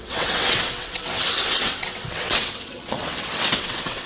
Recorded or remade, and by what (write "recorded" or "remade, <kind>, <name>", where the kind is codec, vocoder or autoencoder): remade, vocoder, WaveNeXt